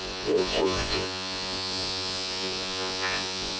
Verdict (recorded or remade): remade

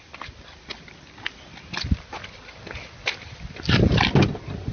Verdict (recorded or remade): recorded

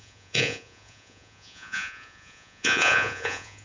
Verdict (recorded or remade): remade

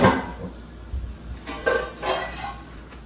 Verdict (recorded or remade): recorded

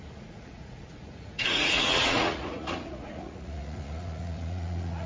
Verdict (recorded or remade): remade